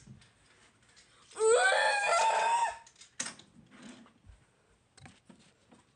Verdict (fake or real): real